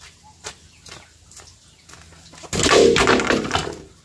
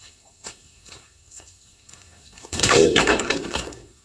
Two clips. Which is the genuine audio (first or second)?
first